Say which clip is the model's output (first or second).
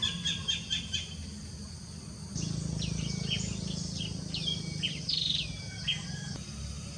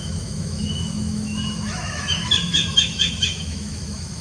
second